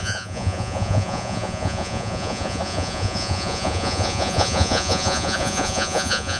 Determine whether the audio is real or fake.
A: fake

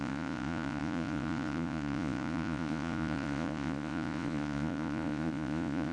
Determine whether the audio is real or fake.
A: fake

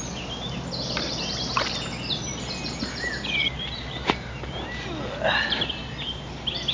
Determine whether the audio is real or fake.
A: real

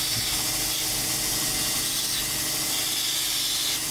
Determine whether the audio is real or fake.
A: real